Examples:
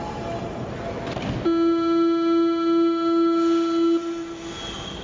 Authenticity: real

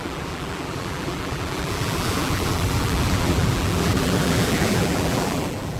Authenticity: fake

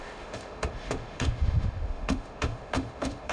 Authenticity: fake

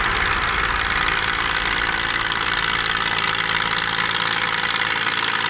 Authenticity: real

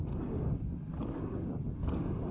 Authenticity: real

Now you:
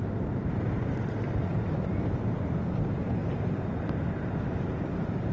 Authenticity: fake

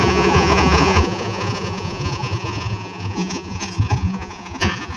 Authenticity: fake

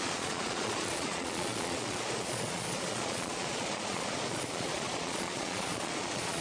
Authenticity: fake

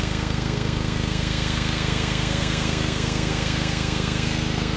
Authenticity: fake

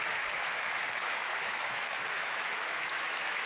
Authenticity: fake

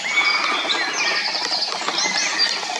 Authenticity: real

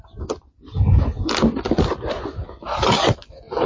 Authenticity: real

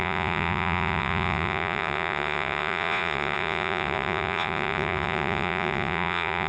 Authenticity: fake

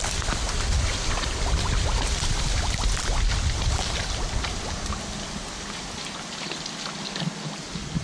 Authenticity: real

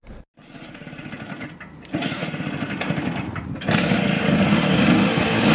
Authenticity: real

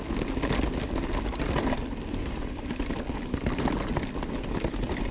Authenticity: real